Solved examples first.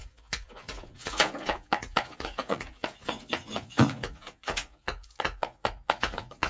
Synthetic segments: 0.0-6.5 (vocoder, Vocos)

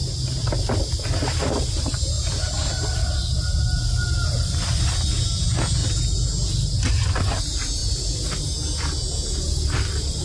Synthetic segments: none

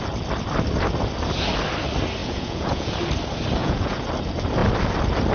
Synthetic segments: 2.2-2.9 (vocoder, Vocos); 3.6-4.1

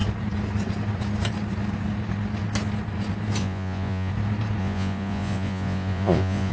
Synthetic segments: 3.4-4.1 (vocoder, Vocos); 4.6-6.5

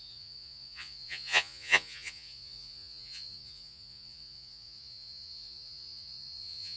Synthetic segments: 0.0-6.8 (vocoder, Vocos)

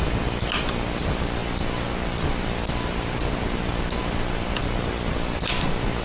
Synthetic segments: none

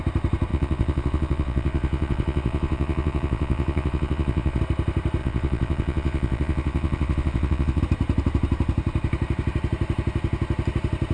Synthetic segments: 0.5-4.6 (vocoder, Vocos); 5.2-7.8